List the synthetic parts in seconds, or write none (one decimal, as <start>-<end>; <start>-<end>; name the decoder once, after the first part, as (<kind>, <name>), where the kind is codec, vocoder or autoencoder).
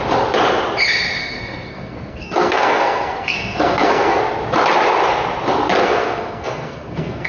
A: 1.2-4.2 (codec, SNAC); 5.8-7.3